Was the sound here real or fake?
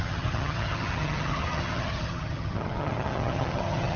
fake